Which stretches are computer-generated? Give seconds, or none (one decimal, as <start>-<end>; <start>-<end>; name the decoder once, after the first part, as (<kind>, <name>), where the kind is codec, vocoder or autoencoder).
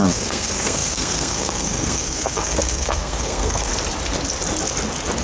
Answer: 0.0-3.7 (codec, SNAC)